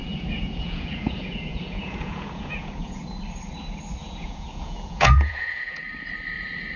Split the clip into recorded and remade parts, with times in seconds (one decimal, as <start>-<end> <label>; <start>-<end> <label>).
0.0-3.0 remade; 3.0-4.0 recorded; 4.0-5.8 remade; 5.8-6.8 recorded